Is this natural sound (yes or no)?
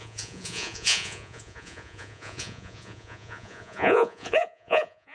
no